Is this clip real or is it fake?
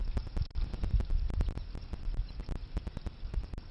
real